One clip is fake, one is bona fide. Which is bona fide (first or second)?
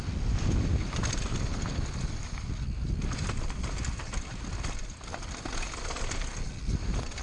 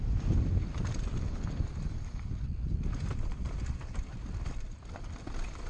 first